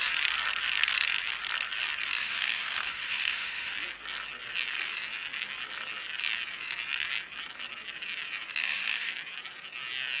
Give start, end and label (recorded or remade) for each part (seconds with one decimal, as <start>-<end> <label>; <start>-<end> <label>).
0.0-2.2 recorded; 2.2-3.7 remade; 3.7-8.6 recorded; 8.6-9.1 remade; 9.1-10.2 recorded